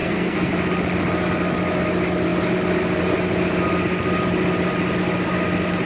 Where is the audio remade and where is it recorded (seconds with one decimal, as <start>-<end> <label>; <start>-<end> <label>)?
0.0-0.5 remade; 0.5-5.9 recorded